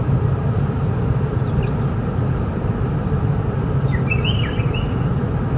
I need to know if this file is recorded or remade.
recorded